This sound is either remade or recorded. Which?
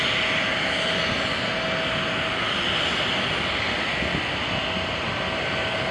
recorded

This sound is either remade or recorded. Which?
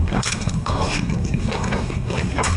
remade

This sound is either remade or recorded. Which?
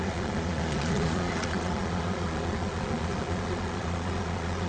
remade